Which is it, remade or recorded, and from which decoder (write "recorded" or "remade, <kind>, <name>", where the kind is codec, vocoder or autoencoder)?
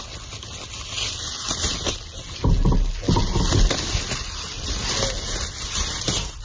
recorded